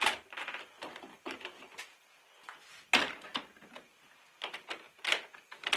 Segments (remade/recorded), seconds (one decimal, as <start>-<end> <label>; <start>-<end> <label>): 0.0-5.8 recorded